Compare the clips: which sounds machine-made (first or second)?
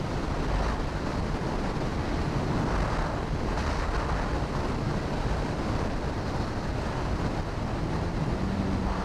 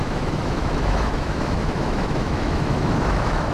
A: second